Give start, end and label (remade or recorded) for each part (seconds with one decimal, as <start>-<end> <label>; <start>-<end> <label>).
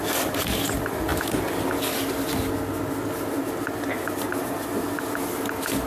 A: 0.0-5.9 recorded